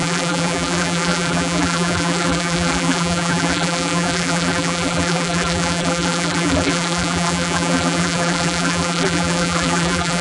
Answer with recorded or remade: remade